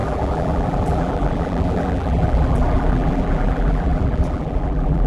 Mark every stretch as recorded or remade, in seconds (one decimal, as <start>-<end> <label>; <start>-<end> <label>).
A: 0.0-5.1 remade

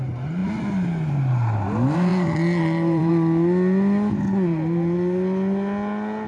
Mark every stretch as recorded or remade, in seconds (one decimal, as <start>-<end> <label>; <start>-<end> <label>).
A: 0.0-2.1 recorded; 2.1-3.1 remade; 3.1-6.3 recorded

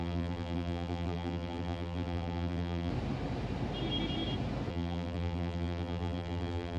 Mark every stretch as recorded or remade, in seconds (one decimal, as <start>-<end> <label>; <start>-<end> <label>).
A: 0.0-2.9 remade; 2.9-4.7 recorded; 4.7-6.8 remade

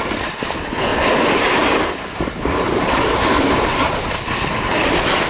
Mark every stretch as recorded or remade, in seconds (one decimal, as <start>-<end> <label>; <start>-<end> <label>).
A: 0.0-0.9 recorded; 0.9-4.1 remade; 4.1-5.3 recorded

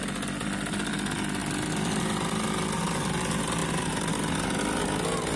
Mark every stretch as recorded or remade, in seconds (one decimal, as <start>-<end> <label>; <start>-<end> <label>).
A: 0.0-5.4 recorded